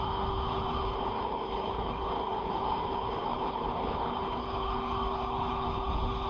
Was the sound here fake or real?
fake